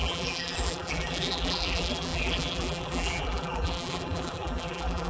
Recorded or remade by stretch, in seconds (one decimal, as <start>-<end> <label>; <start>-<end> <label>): 0.0-5.1 remade